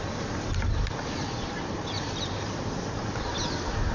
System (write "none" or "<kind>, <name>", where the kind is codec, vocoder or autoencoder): none